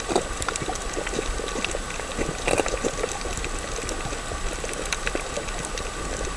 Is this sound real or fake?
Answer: real